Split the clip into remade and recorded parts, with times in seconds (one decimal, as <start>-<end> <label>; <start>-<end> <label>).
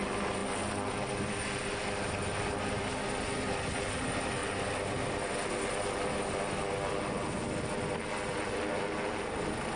0.0-9.8 recorded